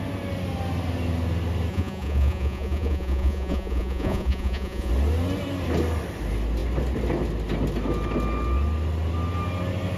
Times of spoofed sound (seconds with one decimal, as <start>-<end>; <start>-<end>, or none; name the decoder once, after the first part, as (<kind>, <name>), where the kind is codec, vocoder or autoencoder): 1.7-4.9 (vocoder, Vocos)